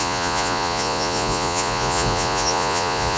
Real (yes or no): no